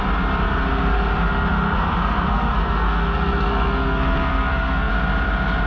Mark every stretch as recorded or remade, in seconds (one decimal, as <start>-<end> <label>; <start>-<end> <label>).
0.0-1.5 recorded; 1.5-4.9 remade; 4.9-5.7 recorded